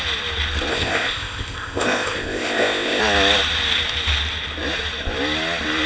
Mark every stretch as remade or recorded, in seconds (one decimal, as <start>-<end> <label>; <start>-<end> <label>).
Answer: 0.0-0.7 recorded; 0.7-3.0 remade; 3.0-5.9 recorded